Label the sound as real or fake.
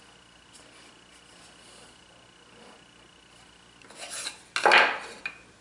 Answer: real